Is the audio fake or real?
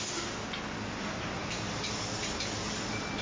real